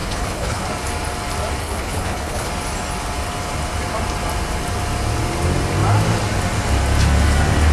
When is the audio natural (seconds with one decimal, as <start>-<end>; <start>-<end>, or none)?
0.6-1.6; 2.5-7.7